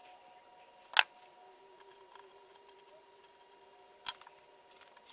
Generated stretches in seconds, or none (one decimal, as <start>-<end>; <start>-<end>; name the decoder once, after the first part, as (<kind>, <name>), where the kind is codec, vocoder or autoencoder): none